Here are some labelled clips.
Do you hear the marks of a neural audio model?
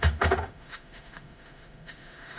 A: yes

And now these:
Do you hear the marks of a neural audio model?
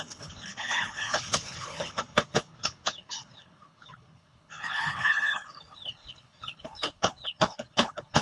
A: yes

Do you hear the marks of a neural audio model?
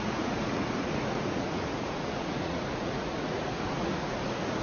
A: yes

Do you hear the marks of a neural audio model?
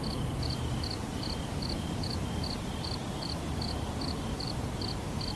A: no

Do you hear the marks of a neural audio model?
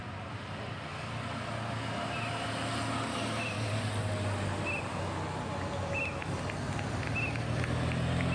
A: no